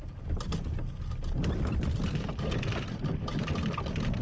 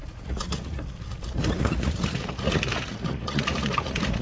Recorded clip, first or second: first